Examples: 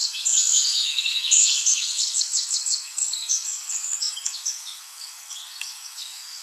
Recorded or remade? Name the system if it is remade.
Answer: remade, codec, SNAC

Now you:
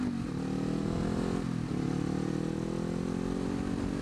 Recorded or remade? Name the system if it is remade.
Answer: recorded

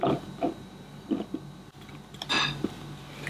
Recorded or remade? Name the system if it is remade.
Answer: recorded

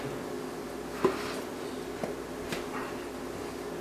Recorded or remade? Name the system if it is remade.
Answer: recorded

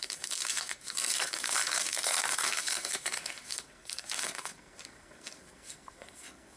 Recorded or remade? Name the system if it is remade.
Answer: remade, codec, SNAC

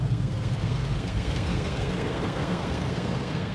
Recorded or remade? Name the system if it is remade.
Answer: remade, codec, SNAC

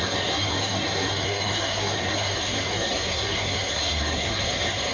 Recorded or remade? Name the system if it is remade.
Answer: remade, codec, SNAC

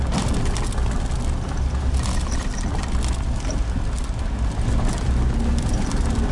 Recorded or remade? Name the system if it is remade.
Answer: recorded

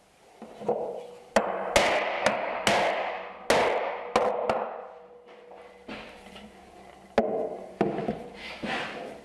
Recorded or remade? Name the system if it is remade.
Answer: recorded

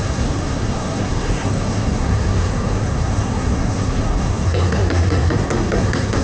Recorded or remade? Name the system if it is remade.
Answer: remade, codec, SNAC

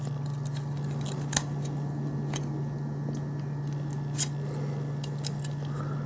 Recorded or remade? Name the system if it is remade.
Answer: recorded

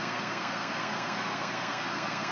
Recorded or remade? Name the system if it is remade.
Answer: remade, codec, SNAC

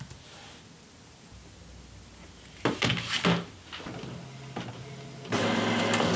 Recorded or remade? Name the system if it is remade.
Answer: recorded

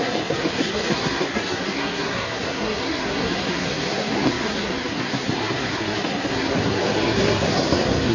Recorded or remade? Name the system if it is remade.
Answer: remade, codec, SNAC